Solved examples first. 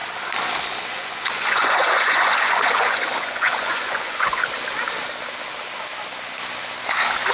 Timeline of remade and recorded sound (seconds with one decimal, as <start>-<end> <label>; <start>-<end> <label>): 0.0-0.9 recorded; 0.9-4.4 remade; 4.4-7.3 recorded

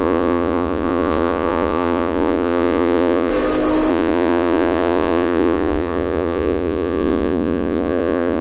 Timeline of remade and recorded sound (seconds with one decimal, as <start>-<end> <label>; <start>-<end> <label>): 0.0-3.3 remade; 3.3-3.9 recorded; 3.9-8.4 remade

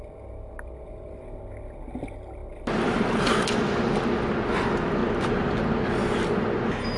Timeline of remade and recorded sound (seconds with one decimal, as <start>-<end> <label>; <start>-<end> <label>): 0.0-7.0 recorded

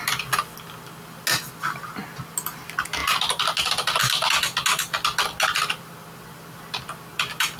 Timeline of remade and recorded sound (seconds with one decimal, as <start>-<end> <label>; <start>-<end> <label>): 0.0-7.6 recorded

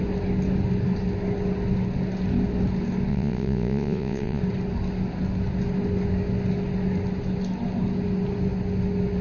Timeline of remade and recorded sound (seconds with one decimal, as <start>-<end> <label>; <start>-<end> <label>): 0.0-3.1 recorded; 3.1-4.4 remade; 4.4-9.2 recorded

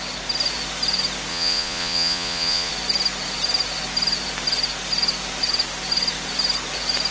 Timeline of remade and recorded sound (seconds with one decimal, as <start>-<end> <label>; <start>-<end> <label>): 0.0-1.3 recorded; 1.3-2.7 remade; 2.7-7.1 recorded